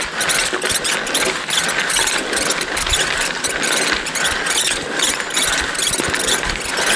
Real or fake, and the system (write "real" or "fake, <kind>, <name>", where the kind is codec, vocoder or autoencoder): real